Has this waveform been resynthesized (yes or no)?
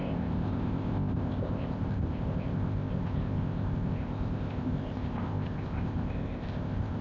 yes